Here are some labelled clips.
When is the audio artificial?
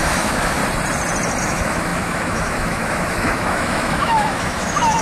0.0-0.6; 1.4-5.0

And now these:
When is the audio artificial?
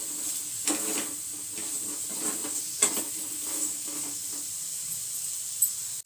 3.5-4.2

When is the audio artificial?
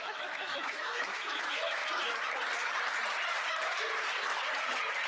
0.0-1.8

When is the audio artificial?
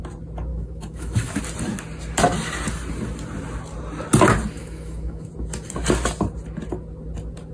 0.5-1.4; 4.6-5.3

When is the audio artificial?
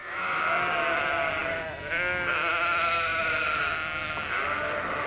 0.0-0.5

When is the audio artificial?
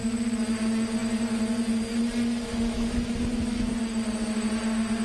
2.5-3.7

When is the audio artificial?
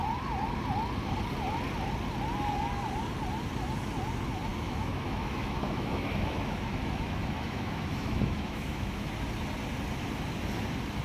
4.5-9.1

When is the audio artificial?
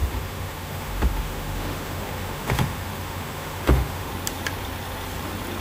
0.0-4.1